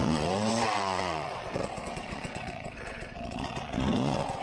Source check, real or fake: fake